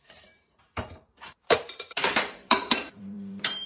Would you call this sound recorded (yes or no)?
no